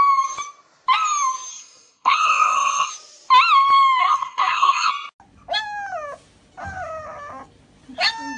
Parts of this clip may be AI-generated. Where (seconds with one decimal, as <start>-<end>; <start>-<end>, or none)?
1.5-2.9; 4.0-4.9

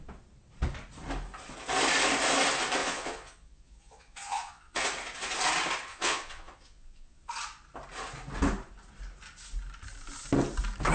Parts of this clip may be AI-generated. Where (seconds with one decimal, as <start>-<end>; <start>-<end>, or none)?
2.8-4.8; 5.9-7.3

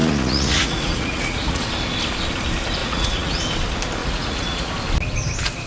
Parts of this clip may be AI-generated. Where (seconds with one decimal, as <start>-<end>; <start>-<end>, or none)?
0.0-1.7; 2.8-3.4; 4.0-4.7